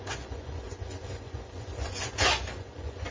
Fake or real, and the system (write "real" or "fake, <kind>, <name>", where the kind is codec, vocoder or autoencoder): fake, vocoder, Vocos